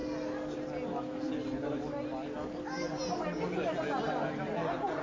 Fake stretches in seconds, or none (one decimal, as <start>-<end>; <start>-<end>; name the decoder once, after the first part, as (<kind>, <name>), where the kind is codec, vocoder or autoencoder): none